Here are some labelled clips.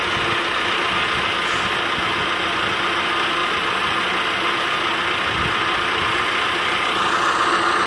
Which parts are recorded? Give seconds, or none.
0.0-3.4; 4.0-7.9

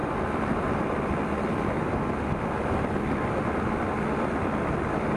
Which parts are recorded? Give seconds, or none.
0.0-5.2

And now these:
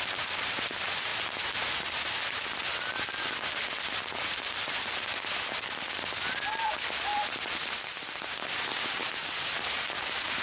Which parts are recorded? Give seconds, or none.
0.0-1.1; 1.9-7.1